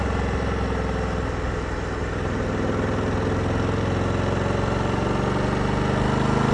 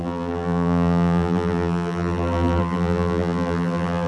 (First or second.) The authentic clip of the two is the first